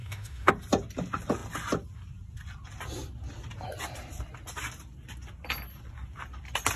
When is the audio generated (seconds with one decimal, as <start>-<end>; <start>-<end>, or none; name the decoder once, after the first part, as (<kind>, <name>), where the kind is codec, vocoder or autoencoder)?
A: 0.0-0.5 (autoencoder, DAC-VAE)